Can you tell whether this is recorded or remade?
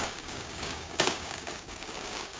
remade